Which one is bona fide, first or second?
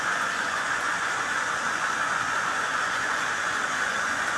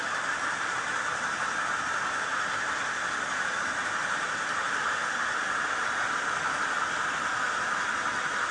second